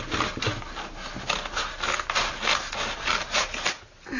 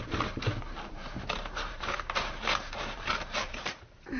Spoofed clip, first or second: second